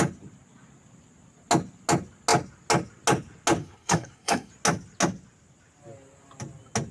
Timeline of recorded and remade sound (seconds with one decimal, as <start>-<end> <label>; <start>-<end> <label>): 0.0-3.6 recorded; 3.6-4.5 remade; 4.5-6.9 recorded